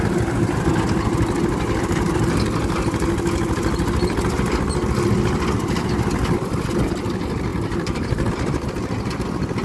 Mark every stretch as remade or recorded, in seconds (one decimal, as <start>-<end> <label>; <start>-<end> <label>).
0.0-7.5 recorded; 7.5-8.3 remade; 8.3-9.6 recorded